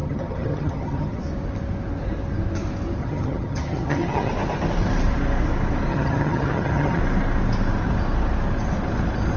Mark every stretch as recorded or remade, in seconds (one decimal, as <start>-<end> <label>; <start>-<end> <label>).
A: 0.0-1.2 remade; 1.2-3.0 recorded; 3.0-4.3 remade; 4.3-5.9 recorded; 5.9-7.0 remade; 7.0-9.4 recorded